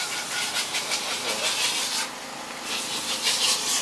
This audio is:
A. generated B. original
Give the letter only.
B